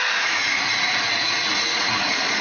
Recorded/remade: remade